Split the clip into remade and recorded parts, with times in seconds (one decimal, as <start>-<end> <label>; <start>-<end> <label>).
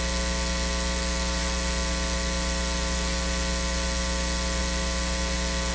0.0-5.7 recorded